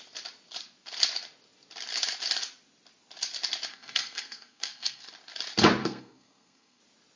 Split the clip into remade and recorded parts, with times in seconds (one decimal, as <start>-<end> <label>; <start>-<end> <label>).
0.0-3.7 recorded; 3.7-5.1 remade; 5.1-5.8 recorded; 5.8-6.8 remade; 6.8-7.2 recorded